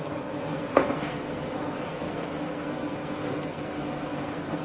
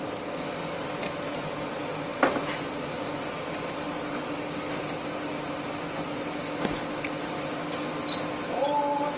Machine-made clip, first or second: first